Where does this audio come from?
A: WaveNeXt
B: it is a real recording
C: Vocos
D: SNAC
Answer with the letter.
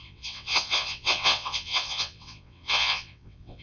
A